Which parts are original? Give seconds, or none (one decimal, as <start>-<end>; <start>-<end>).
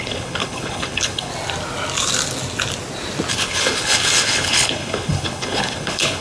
1.3-3.3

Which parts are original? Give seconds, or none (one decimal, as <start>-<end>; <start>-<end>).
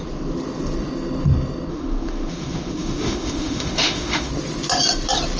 0.0-1.7; 4.3-5.4